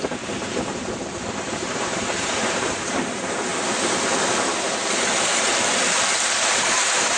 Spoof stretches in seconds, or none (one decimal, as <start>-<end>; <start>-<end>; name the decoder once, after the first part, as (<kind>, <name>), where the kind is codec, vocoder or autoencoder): 0.0-1.0 (vocoder, BigVGAN v2); 1.5-3.5; 6.2-7.2